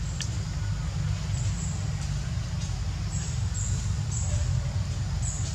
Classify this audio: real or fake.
real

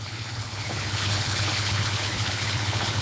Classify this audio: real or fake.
fake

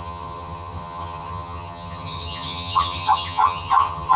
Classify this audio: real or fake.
fake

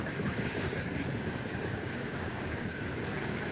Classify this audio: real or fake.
fake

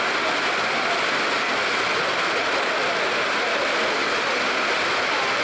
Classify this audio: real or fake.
real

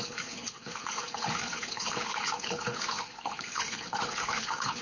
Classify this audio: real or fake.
fake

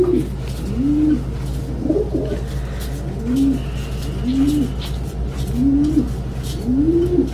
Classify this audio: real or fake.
real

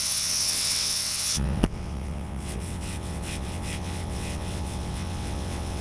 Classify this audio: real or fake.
fake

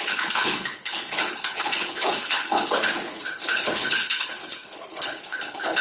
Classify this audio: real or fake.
fake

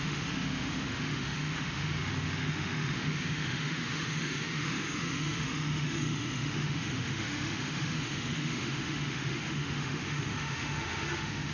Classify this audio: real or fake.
fake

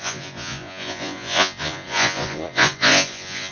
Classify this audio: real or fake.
fake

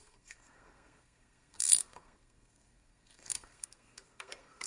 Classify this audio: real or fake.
fake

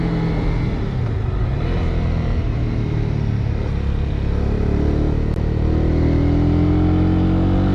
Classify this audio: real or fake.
real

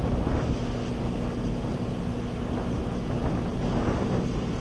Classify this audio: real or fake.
real